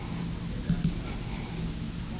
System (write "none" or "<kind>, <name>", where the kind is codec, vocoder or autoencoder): none